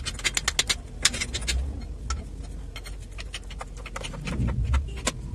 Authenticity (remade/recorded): recorded